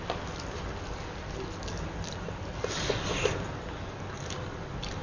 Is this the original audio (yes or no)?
yes